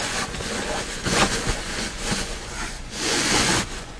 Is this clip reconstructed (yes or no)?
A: yes